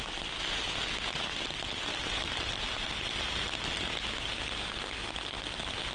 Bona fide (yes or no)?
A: yes